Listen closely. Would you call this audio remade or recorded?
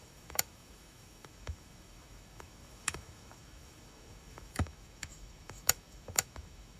remade